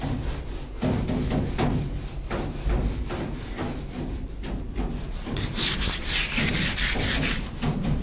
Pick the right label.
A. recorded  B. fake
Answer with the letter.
A